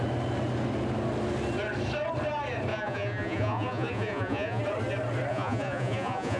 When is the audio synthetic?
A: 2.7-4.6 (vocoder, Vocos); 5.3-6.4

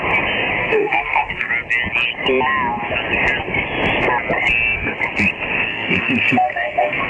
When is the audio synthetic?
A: 0.6-1.5 (codec, SNAC); 5.7-7.1

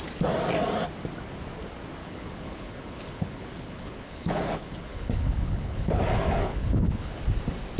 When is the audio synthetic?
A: 2.0-6.0 (codec, HILCodec); 6.5-7.1

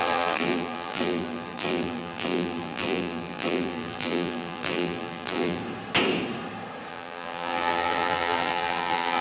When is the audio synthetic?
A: 0.0-5.6 (vocoder, BigVGAN v2); 6.9-9.2